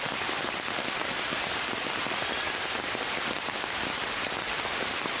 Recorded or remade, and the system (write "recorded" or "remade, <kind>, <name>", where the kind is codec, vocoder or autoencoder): recorded